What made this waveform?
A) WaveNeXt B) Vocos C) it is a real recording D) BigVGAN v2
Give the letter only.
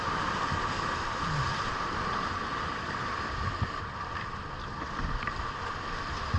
C